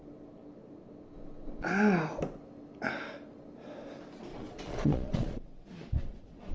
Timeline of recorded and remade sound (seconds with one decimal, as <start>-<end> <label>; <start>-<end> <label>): 0.0-4.3 recorded; 4.3-6.5 remade